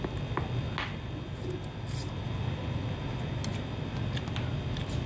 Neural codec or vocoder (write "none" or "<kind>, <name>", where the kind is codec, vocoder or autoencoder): none